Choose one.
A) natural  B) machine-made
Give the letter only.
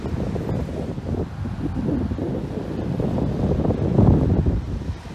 A